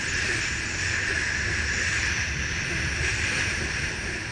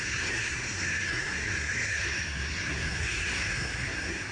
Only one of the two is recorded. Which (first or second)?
first